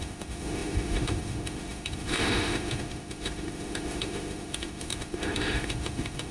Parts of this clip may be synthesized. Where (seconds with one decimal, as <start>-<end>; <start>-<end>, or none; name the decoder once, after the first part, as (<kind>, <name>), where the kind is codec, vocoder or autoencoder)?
0.0-6.3 (autoencoder, DAC-VAE)